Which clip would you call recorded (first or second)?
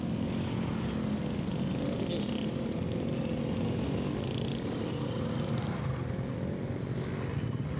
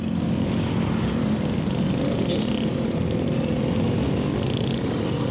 first